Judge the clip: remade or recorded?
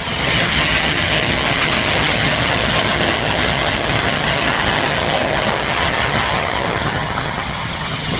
remade